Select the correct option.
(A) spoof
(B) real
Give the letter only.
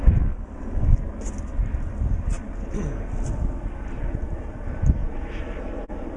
B